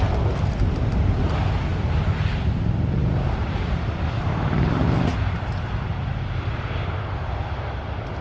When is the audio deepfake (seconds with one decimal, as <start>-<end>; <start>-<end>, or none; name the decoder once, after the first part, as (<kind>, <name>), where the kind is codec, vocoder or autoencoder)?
none